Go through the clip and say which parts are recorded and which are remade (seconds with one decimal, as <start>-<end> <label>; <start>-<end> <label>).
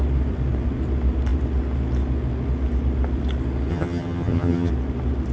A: 0.0-3.7 recorded; 3.7-4.7 remade; 4.7-5.3 recorded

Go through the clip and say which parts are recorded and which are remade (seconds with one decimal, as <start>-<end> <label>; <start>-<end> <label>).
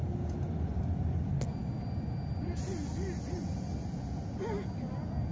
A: 0.0-5.3 recorded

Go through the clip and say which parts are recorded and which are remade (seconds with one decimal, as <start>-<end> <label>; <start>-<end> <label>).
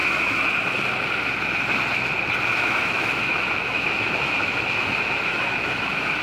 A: 0.0-0.5 remade; 0.5-2.5 recorded; 2.5-6.2 remade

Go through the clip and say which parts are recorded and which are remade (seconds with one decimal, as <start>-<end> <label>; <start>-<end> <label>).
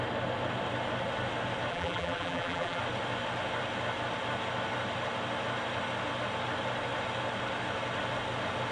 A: 0.0-1.7 recorded; 1.7-2.8 remade; 2.8-8.7 recorded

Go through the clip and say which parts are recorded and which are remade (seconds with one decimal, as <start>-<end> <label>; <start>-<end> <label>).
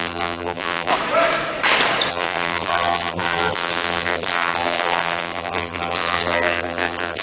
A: 0.0-0.9 remade; 0.9-2.1 recorded; 2.1-7.2 remade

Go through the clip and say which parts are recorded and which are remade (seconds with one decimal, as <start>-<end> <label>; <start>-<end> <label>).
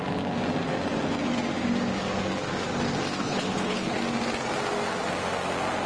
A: 0.0-3.2 recorded; 3.2-4.0 remade; 4.0-5.9 recorded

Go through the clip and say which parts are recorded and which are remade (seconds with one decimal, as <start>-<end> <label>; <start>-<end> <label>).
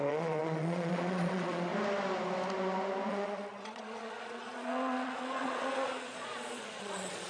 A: 0.0-1.7 remade; 1.7-3.1 recorded; 3.1-7.3 remade